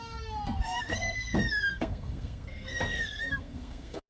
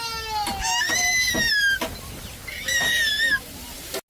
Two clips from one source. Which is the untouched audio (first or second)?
second